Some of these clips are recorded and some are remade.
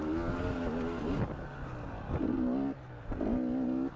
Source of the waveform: recorded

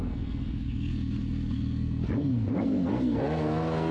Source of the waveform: remade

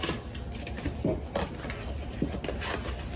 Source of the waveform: recorded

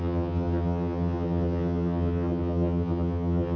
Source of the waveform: remade